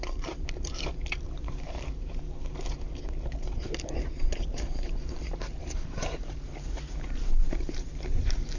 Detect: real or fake fake